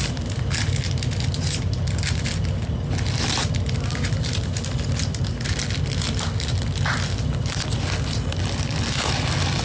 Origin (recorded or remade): recorded